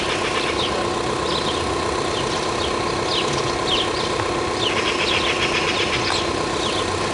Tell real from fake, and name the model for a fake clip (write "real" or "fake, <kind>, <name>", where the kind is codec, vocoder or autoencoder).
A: real